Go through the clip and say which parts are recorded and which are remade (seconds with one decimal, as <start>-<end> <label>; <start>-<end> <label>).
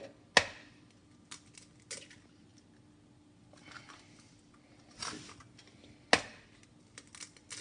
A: 0.0-7.6 recorded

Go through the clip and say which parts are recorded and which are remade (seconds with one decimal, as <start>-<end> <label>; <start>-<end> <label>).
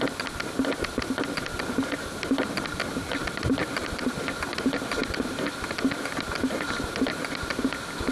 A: 0.0-2.8 recorded; 2.8-4.2 remade; 4.2-8.1 recorded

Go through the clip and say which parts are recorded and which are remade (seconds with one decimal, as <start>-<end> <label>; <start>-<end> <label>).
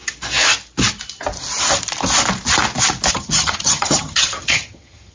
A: 0.0-3.1 recorded; 3.1-5.1 remade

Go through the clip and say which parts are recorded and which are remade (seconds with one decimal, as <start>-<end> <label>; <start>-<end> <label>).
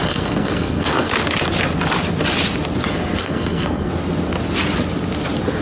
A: 0.0-1.1 remade; 1.1-3.2 recorded; 3.2-3.9 remade; 3.9-5.6 recorded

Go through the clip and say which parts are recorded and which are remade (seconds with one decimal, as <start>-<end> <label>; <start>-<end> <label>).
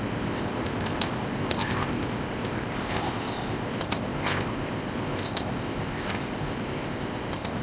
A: 0.0-7.6 remade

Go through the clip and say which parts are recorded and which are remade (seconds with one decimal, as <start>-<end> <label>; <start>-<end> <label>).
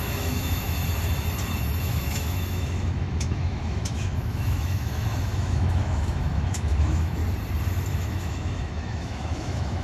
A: 0.0-0.8 remade; 0.8-1.8 recorded; 1.8-7.2 remade; 7.2-7.9 recorded; 7.9-9.8 remade